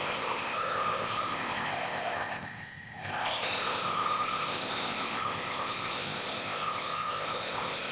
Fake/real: fake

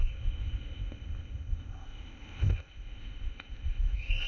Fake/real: fake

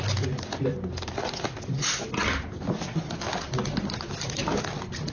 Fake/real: real